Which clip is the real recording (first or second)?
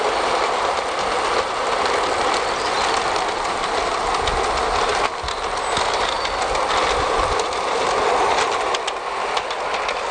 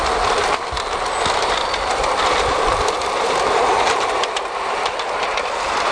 first